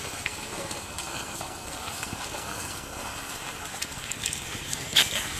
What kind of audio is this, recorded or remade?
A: remade